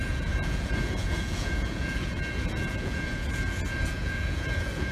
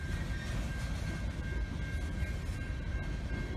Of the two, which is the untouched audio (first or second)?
second